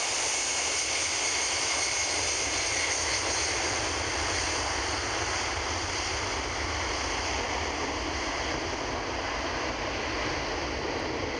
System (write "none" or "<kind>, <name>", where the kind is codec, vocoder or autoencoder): none